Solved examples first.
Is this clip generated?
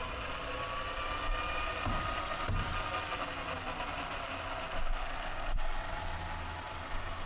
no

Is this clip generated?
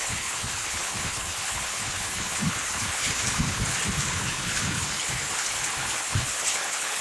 yes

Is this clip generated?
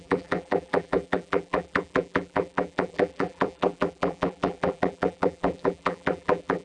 yes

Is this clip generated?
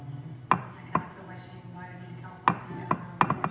no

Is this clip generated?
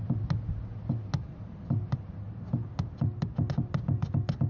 no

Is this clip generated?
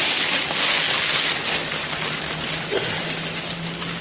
no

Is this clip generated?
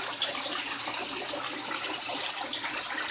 no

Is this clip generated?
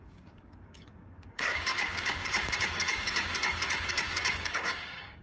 yes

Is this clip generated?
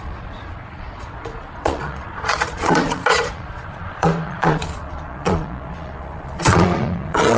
yes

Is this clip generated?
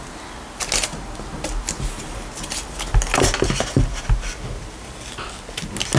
no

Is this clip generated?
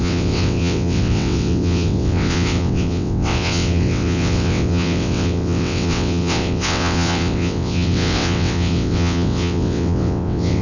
yes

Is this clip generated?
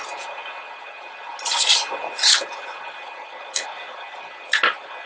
no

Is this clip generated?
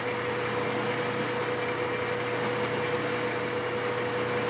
no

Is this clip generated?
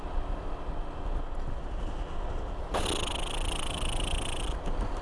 no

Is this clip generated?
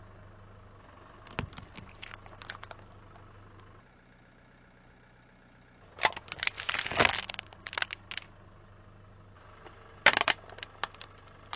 no